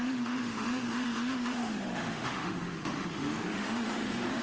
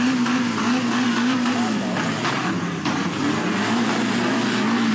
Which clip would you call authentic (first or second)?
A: second